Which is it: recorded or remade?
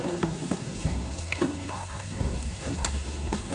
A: remade